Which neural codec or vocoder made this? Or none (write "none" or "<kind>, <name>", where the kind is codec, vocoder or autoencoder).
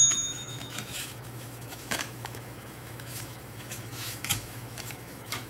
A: autoencoder, DAC-VAE